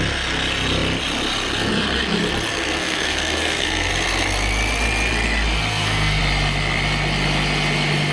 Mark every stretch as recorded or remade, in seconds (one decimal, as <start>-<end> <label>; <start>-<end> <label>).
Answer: 0.0-2.5 recorded; 2.5-3.9 remade; 3.9-5.7 recorded; 5.7-6.2 remade; 6.2-8.1 recorded